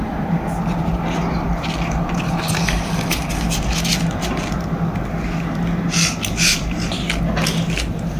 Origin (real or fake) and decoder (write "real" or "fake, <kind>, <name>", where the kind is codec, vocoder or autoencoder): real